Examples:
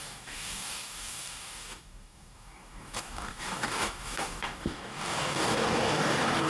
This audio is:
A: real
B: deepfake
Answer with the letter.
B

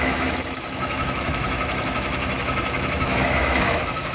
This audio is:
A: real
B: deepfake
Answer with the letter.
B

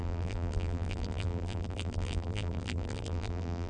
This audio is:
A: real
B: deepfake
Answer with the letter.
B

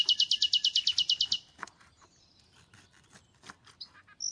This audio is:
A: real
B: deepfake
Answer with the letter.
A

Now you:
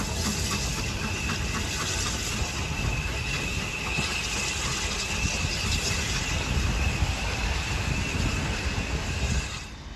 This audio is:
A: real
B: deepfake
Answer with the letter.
A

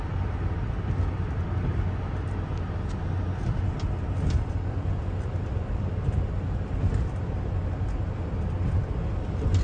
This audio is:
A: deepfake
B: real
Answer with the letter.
B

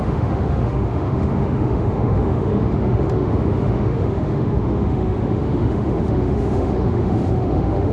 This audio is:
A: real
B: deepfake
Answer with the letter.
B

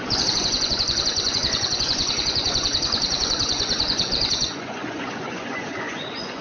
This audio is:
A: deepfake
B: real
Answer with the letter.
A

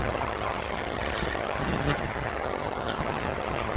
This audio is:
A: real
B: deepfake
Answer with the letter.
B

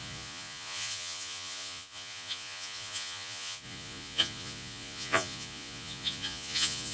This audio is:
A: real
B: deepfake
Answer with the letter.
B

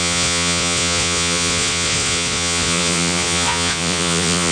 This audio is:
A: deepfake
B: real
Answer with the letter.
A